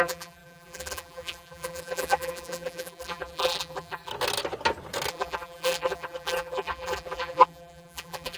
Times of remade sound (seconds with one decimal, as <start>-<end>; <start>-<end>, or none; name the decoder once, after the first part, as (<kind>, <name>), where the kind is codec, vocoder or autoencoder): 0.0-4.1 (vocoder, BigVGAN v2); 5.1-8.4